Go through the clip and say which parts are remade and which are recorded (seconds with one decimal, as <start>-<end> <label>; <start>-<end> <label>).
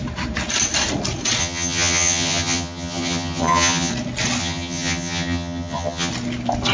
0.0-1.4 recorded; 1.4-3.9 remade; 3.9-4.4 recorded; 4.4-6.1 remade; 6.1-6.7 recorded